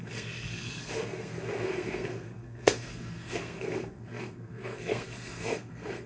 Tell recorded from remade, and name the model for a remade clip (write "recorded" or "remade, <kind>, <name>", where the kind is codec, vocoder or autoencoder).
remade, codec, SNAC